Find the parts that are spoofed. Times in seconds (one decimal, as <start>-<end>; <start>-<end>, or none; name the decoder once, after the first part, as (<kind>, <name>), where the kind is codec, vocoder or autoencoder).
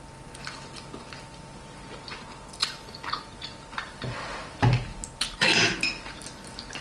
none